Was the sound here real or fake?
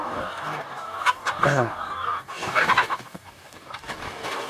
fake